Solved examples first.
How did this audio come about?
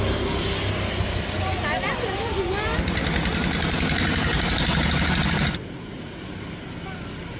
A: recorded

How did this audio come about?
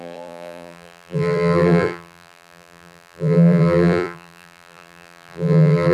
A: remade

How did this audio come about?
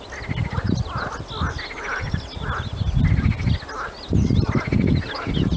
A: recorded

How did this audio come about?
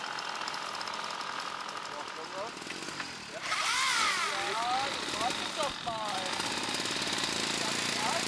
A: recorded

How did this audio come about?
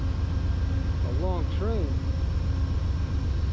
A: recorded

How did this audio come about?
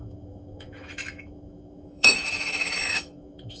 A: remade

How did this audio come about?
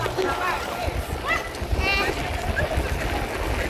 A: recorded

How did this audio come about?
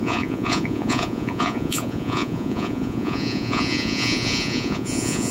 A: remade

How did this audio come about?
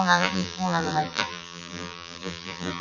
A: remade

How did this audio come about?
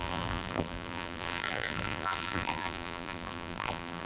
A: remade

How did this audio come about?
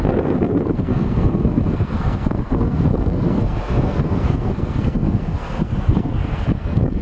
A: remade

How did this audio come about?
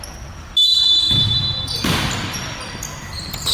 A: recorded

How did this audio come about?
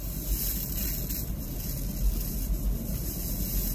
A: recorded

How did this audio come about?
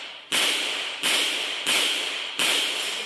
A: recorded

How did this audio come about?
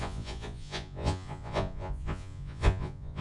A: remade